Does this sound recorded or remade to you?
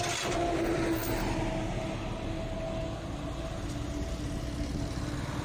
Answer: recorded